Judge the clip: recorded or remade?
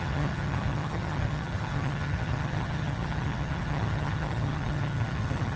remade